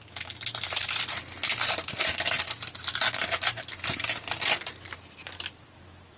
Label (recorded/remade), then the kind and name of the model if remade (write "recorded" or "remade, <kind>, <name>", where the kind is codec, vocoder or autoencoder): recorded